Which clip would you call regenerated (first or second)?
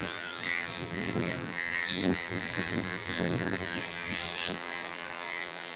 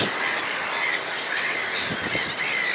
first